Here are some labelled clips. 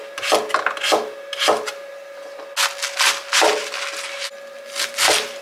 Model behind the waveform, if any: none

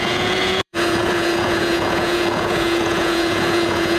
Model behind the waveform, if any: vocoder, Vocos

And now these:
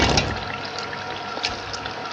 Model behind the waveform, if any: none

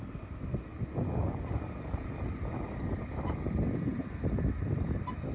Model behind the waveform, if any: none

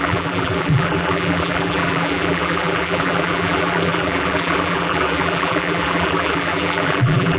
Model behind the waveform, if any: vocoder, BigVGAN v2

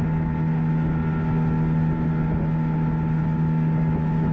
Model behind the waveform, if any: none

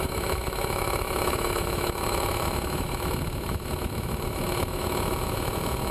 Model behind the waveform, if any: autoencoder, DAC-VAE